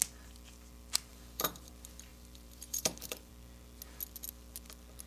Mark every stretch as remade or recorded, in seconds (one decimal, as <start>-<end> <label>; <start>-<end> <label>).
0.0-1.1 recorded; 1.1-1.7 remade; 1.7-2.1 recorded; 2.1-3.3 remade; 3.3-5.1 recorded